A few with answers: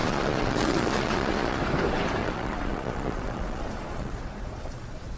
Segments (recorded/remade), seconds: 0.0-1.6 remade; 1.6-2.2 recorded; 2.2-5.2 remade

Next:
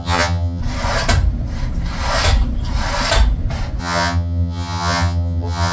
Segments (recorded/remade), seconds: 0.0-0.6 remade; 0.6-3.8 recorded; 3.8-5.7 remade

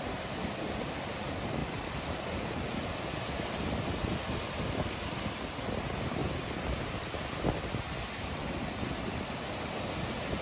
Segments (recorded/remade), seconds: 0.0-10.4 remade

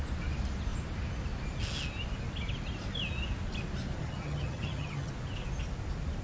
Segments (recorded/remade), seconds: 0.0-4.0 recorded; 4.0-5.1 remade; 5.1-6.2 recorded

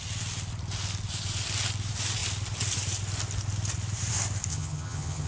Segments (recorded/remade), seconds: 0.0-4.5 recorded; 4.5-5.3 remade

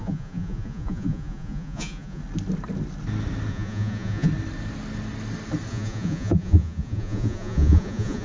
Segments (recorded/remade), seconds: 0.0-2.2 remade; 2.2-3.5 recorded; 3.5-4.3 remade; 4.3-5.7 recorded; 5.7-8.2 remade

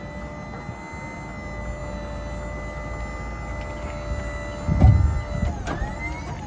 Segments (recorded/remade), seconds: 0.0-6.5 recorded